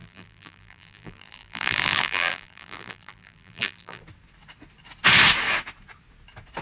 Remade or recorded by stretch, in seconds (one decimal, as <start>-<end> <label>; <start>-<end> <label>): 0.0-4.0 remade; 4.0-6.6 recorded